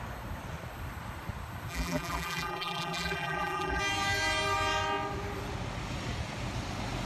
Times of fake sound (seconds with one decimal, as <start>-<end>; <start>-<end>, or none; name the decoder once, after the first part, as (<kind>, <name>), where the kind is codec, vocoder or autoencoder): 1.7-3.8 (vocoder, BigVGAN v2)